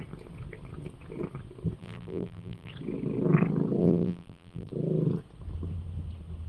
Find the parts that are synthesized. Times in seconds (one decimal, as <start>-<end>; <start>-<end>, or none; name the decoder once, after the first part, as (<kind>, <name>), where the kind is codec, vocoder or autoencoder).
1.8-2.7 (vocoder, BigVGAN v2); 3.8-4.7